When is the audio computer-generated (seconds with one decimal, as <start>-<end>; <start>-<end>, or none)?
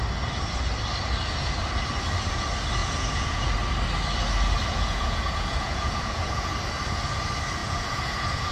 2.8-3.5; 4.7-6.5; 7.6-8.5